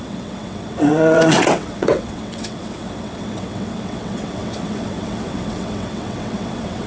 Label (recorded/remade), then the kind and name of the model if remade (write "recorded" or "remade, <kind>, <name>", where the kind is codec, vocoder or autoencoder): remade, vocoder, WaveNeXt